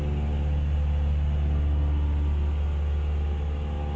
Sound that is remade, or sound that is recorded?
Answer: recorded